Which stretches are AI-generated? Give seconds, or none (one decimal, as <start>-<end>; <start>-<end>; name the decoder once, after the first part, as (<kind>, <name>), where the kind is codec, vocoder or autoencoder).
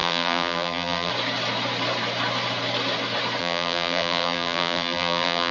0.0-1.1 (vocoder, BigVGAN v2); 3.4-5.5